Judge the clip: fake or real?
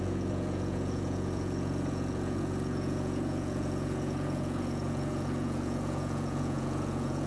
fake